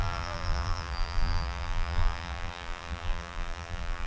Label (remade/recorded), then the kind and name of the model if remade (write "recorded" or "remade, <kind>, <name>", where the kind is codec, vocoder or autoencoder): remade, vocoder, BigVGAN v2